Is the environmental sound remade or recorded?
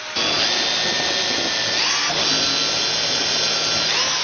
recorded